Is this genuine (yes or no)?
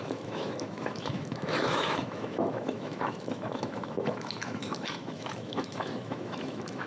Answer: no